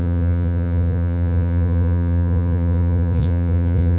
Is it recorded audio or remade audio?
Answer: remade